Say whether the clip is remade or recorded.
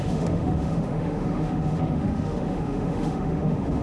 remade